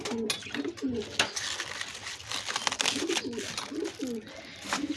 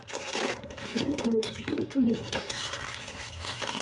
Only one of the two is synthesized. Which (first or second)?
second